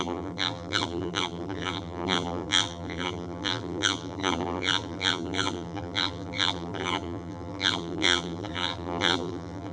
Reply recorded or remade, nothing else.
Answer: remade